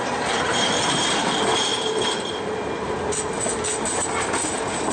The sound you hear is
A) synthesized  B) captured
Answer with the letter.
B